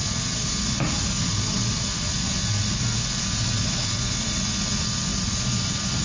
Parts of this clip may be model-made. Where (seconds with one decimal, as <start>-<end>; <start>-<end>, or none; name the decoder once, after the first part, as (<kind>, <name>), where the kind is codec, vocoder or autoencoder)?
5.1-6.0 (vocoder, BigVGAN v2)